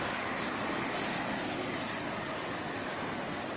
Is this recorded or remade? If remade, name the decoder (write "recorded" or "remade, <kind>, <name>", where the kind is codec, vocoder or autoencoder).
recorded